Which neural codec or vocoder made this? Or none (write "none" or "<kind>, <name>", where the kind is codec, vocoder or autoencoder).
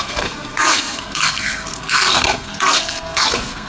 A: codec, SNAC